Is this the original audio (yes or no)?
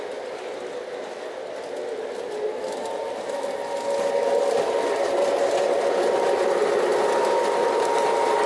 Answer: yes